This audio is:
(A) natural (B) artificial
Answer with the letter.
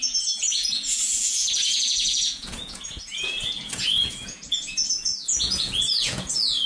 B